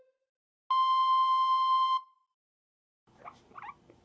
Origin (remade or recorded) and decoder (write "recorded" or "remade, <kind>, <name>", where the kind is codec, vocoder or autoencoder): recorded